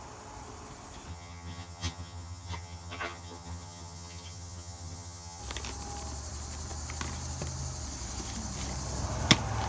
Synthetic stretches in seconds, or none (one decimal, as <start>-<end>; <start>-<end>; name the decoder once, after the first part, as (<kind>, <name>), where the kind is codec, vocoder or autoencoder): 1.1-5.4 (vocoder, HiFi-GAN)